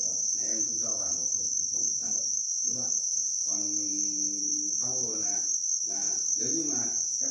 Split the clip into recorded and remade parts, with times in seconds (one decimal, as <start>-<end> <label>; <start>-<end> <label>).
0.0-0.5 recorded; 0.5-3.0 remade; 3.0-4.4 recorded; 4.4-6.4 remade; 6.4-7.3 recorded